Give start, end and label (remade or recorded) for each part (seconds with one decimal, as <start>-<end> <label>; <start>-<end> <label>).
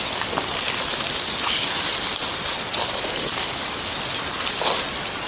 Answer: 0.0-5.3 recorded